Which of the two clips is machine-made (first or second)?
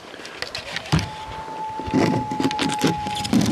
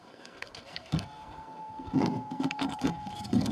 second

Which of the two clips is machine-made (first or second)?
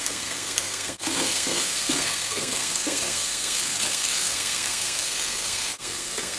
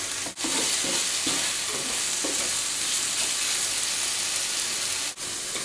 first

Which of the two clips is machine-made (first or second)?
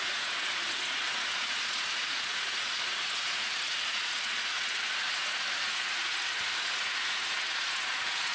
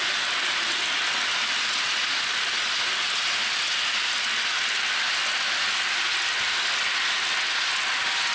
first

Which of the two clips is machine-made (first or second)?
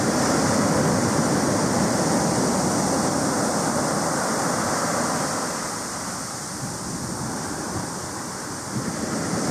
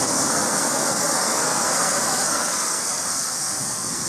second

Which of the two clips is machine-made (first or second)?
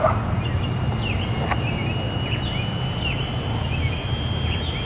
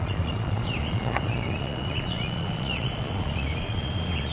second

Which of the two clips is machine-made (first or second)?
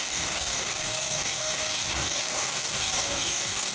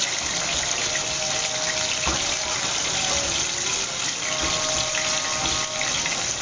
first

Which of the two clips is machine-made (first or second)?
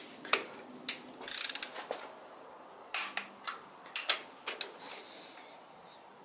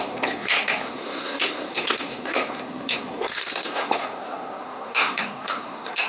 second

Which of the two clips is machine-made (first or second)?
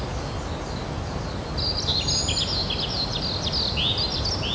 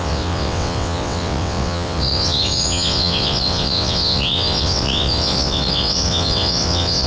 second